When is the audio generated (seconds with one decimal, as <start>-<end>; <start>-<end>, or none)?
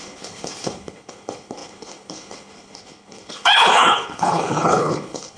0.0-5.4